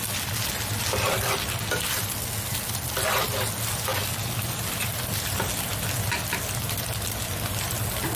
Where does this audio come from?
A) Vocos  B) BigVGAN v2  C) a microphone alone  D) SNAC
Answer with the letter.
C